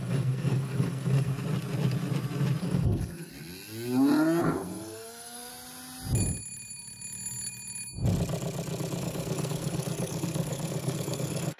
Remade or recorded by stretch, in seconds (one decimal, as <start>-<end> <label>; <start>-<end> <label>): 0.0-1.3 remade; 1.3-2.6 recorded; 2.6-3.3 remade; 3.3-4.4 recorded; 4.4-5.5 remade; 5.5-9.0 recorded; 9.0-11.6 remade